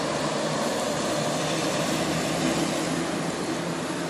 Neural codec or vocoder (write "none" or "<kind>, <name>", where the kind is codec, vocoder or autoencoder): none